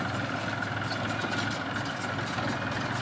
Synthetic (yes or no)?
no